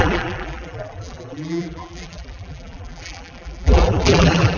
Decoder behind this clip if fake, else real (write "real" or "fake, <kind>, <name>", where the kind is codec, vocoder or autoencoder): fake, vocoder, BigVGAN v2